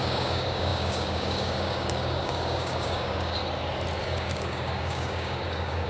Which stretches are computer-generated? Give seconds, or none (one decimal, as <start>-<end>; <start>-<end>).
0.0-3.4; 4.0-5.9